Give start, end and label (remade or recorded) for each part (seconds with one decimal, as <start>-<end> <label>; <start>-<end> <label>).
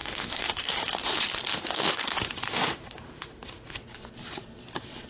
0.0-1.1 remade; 1.1-1.5 recorded; 1.5-3.8 remade; 3.8-5.1 recorded